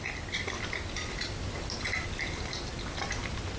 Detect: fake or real real